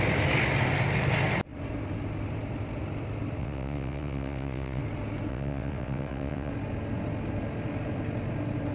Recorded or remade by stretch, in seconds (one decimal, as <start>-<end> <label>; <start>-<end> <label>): 0.0-3.4 recorded; 3.4-4.8 remade; 4.8-5.3 recorded; 5.3-6.5 remade; 6.5-8.7 recorded